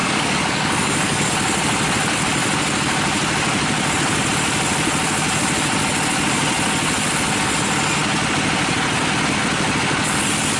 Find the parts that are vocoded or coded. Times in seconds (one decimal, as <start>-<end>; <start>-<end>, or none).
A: 0.0-1.3